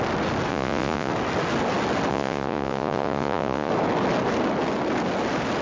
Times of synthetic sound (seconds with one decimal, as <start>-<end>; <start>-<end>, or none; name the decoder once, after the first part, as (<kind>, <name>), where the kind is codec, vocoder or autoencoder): 0.5-1.1 (vocoder, Vocos); 2.1-3.7